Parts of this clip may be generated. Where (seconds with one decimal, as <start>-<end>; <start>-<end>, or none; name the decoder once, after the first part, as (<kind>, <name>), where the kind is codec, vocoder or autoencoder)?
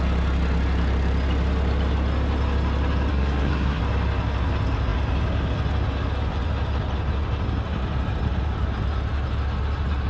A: 3.1-3.8 (codec, SNAC)